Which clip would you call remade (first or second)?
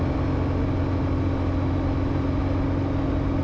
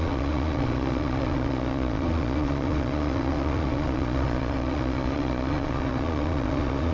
second